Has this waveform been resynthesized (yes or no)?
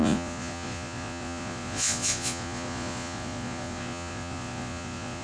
yes